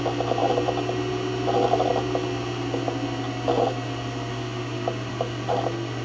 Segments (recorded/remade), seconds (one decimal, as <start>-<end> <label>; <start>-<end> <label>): 0.0-6.0 recorded